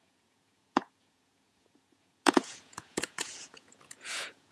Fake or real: fake